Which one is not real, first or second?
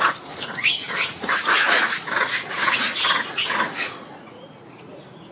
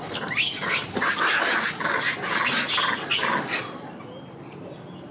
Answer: first